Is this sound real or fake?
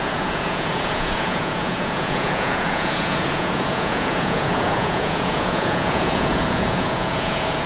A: fake